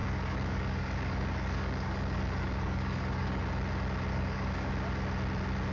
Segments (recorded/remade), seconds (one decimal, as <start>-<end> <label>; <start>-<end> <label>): 0.0-3.4 remade; 3.4-4.1 recorded; 4.1-4.7 remade; 4.7-5.7 recorded